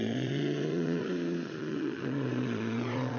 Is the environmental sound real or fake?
fake